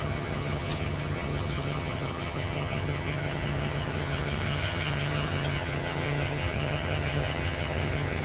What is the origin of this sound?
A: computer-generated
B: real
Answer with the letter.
A